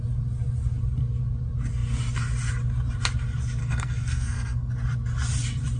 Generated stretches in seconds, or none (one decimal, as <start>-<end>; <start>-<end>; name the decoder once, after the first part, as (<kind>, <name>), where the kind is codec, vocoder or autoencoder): 3.6-4.7 (codec, SNAC)